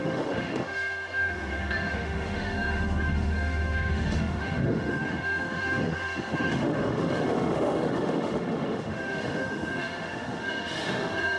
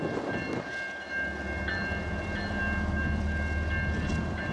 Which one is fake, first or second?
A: first